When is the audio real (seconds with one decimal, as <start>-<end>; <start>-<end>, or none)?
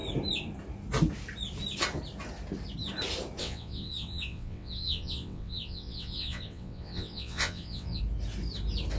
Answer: 0.0-3.4; 8.0-9.0